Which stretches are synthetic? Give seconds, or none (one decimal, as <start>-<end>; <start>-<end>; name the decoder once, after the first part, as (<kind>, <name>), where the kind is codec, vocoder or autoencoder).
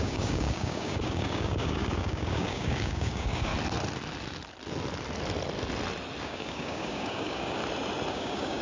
0.0-3.5 (codec, DAC); 6.2-7.6; 8.1-8.6